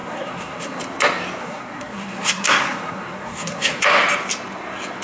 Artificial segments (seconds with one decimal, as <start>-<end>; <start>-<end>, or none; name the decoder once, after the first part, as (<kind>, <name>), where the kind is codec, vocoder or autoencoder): 0.0-0.8 (codec, SNAC); 1.4-3.8